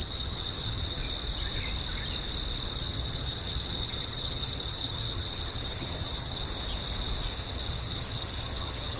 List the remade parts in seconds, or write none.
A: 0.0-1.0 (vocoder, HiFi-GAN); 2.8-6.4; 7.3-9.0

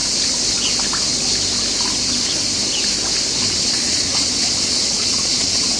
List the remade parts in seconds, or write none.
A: 3.5-5.8 (vocoder, Vocos)

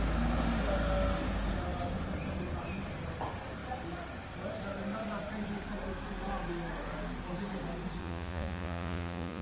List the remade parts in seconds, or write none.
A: 8.0-9.4 (vocoder, Vocos)

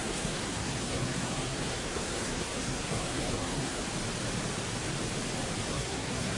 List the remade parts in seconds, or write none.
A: 0.0-3.8 (codec, SNAC); 5.7-6.4